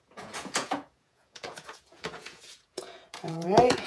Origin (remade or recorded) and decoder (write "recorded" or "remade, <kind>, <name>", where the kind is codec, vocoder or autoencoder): remade, vocoder, Vocos